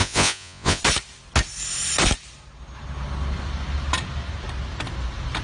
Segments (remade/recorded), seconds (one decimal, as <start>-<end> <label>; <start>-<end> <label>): 0.0-0.8 remade; 0.8-5.4 recorded